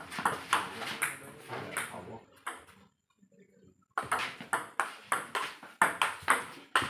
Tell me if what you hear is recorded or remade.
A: recorded